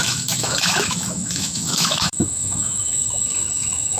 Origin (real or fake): fake